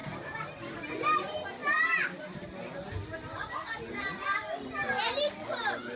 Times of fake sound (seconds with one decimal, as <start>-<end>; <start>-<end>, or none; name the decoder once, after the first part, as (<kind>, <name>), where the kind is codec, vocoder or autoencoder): none